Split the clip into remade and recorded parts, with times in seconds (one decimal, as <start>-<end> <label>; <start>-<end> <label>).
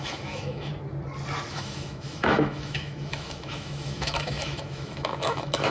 0.0-0.7 remade; 0.7-1.5 recorded; 1.5-5.7 remade